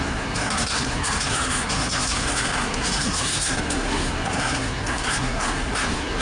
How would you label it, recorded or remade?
remade